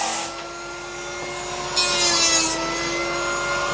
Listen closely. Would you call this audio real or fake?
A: real